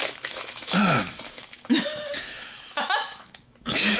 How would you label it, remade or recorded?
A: remade